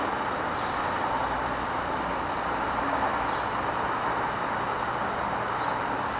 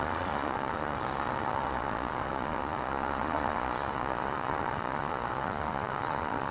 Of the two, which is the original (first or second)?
first